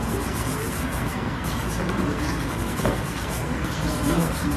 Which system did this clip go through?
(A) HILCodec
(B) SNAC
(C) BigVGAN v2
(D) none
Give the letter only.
B